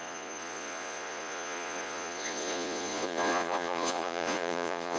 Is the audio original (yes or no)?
no